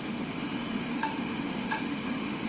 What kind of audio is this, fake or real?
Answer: fake